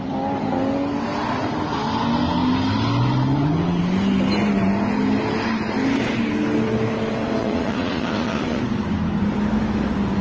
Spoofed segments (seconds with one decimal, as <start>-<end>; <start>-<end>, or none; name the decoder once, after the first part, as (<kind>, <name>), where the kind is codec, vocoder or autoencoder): 7.4-8.6 (vocoder, Vocos)